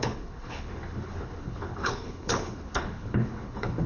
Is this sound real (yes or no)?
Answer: no